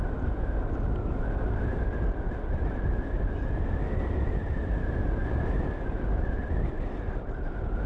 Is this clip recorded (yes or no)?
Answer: yes